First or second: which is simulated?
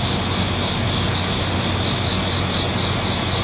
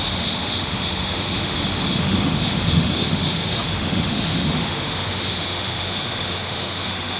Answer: second